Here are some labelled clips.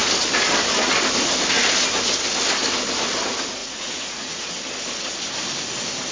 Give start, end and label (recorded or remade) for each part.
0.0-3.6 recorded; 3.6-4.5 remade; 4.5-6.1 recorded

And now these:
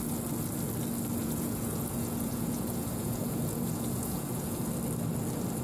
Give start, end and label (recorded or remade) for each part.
0.0-1.2 recorded; 1.2-4.6 remade; 4.6-5.6 recorded

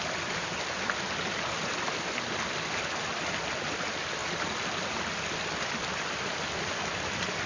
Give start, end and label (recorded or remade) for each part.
0.0-7.5 recorded

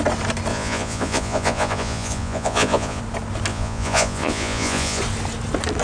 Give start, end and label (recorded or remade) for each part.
0.0-0.5 recorded; 0.5-3.0 remade; 3.0-3.5 recorded; 3.5-5.0 remade; 5.0-5.8 recorded

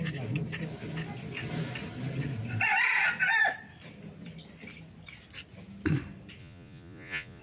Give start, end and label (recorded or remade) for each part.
0.0-6.4 recorded; 6.4-7.4 remade